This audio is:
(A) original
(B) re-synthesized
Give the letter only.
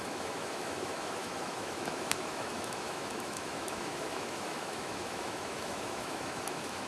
B